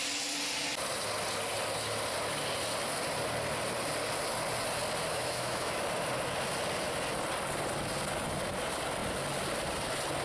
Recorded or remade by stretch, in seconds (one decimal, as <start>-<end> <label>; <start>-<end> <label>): 0.0-5.1 recorded; 5.1-5.8 remade; 5.8-10.2 recorded